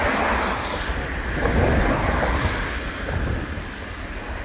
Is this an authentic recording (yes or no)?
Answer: yes